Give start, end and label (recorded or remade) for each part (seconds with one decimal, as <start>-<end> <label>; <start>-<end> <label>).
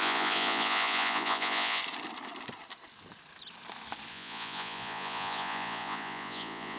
0.0-1.8 remade; 1.8-4.1 recorded; 4.1-6.8 remade